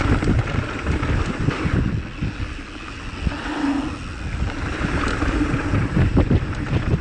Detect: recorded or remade recorded